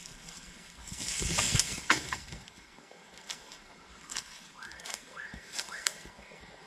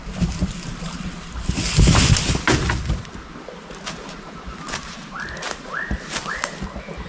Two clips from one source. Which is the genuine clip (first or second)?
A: second